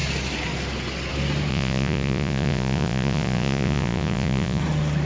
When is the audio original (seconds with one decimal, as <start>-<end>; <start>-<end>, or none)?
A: 0.0-1.5; 4.6-5.1